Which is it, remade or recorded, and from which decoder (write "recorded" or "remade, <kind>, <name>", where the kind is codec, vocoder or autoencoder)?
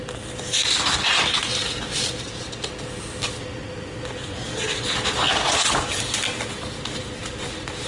recorded